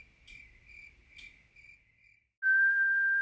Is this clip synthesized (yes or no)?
no